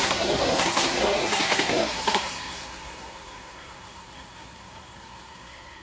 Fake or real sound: fake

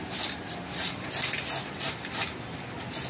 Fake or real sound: real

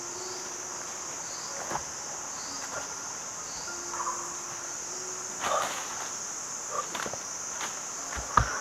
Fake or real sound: real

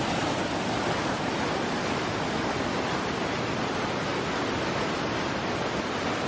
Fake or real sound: real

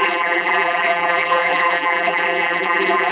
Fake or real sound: fake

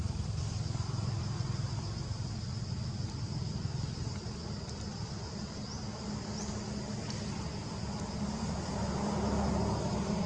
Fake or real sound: real